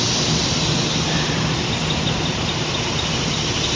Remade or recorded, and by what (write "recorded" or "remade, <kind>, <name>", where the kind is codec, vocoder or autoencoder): recorded